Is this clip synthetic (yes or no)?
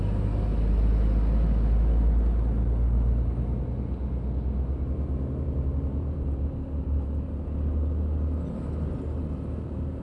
no